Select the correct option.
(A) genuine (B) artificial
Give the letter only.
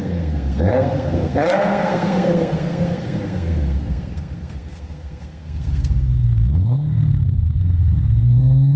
B